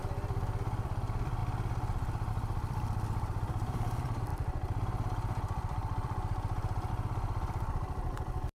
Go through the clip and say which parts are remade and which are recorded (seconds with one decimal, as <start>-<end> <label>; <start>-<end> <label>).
0.0-1.4 remade; 1.4-2.3 recorded; 2.3-8.6 remade